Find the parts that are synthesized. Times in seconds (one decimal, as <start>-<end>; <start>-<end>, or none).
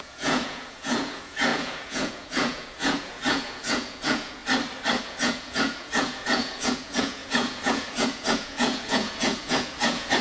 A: 0.0-4.4; 5.0-10.2